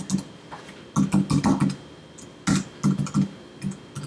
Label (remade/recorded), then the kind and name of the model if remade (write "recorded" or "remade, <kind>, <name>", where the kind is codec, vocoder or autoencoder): recorded